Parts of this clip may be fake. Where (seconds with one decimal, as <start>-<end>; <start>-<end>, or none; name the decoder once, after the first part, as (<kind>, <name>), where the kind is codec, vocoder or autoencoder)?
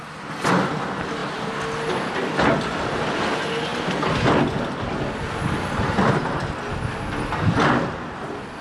none